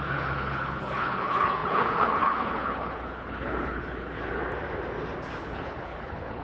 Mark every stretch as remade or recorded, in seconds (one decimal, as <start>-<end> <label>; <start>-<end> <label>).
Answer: 0.0-4.4 remade; 4.4-5.4 recorded; 5.4-6.4 remade